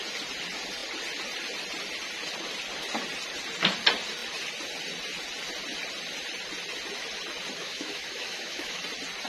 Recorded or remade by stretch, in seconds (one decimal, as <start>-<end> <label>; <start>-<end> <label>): 0.0-7.6 recorded; 7.6-8.8 remade; 8.8-9.3 recorded